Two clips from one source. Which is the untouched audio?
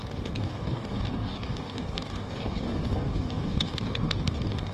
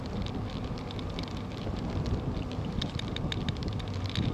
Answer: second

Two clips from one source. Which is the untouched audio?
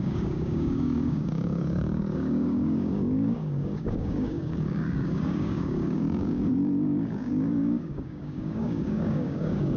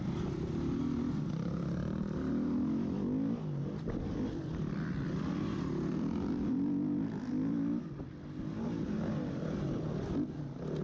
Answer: second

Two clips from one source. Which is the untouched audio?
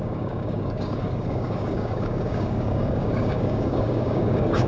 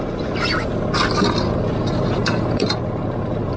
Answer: second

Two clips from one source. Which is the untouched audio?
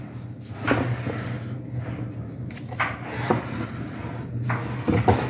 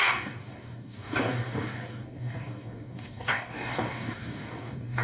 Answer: first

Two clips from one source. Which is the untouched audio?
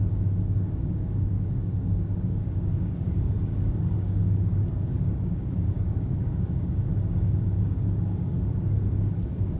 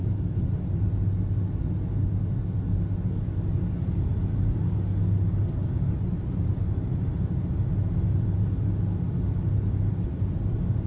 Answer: second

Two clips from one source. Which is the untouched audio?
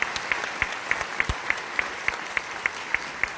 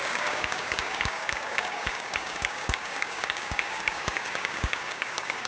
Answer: first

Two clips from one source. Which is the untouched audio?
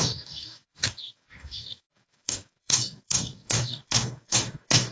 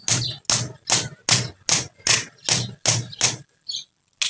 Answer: second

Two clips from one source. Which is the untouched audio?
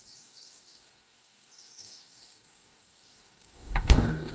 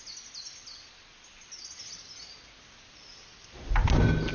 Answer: second